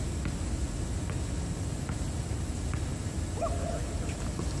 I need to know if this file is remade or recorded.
recorded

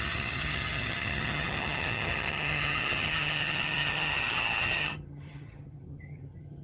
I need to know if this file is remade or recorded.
remade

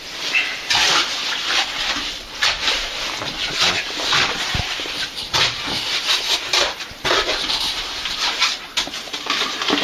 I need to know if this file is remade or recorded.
remade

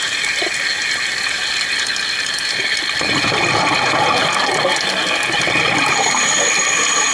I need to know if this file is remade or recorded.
recorded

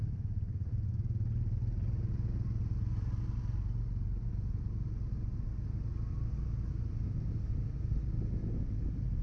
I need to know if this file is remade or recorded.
recorded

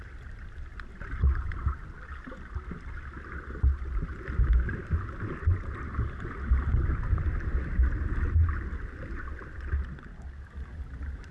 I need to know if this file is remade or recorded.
recorded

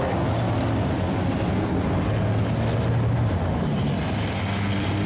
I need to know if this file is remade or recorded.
recorded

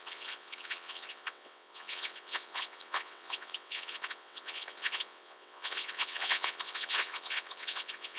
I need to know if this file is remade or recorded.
remade